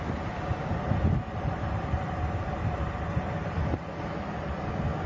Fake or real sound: real